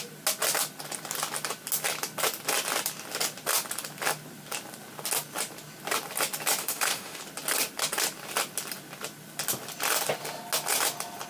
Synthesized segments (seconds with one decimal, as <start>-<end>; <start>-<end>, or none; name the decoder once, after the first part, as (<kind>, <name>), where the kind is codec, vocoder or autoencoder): 6.6-7.2 (autoencoder, DAC-VAE)